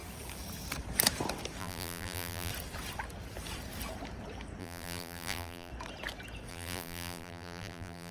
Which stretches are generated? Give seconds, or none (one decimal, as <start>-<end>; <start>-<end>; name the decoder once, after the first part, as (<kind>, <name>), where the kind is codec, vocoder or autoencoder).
1.6-2.5 (vocoder, BigVGAN v2); 4.6-5.7; 6.5-8.1